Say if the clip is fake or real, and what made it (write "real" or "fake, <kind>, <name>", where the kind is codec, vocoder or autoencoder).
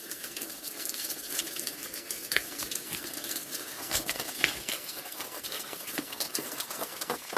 fake, codec, SNAC